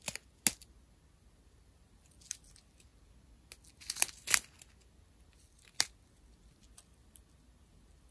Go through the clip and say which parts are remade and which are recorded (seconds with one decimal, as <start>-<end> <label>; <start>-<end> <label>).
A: 0.0-8.1 recorded